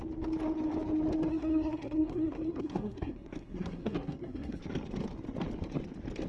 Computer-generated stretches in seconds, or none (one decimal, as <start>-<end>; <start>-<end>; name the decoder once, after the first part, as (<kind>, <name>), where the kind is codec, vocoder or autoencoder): 1.3-4.6 (codec, SNAC)